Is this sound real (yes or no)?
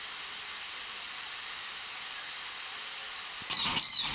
yes